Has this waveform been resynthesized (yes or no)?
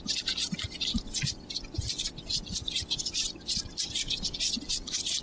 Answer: no